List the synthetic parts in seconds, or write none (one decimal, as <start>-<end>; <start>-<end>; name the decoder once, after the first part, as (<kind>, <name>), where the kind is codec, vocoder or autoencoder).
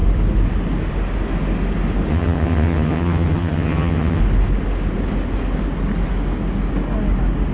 2.1-4.2 (vocoder, HiFi-GAN)